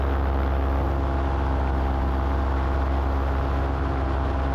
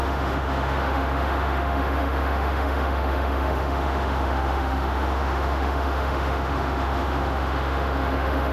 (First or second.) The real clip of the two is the first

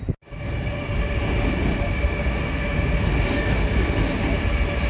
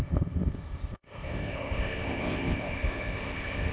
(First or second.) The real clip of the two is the first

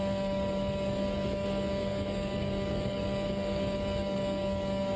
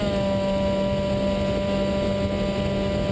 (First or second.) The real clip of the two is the second